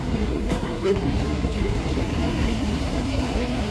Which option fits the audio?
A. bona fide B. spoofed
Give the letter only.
B